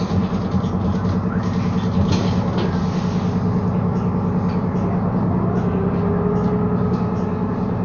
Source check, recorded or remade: recorded